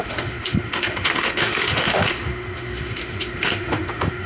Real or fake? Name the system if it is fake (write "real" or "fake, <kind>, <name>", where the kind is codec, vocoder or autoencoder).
fake, autoencoder, DAC-VAE